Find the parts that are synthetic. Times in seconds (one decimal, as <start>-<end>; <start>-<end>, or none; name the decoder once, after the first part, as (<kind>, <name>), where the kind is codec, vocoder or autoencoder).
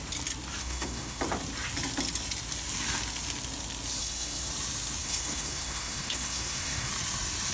0.6-1.2 (codec, SNAC); 4.0-4.5; 5.0-6.9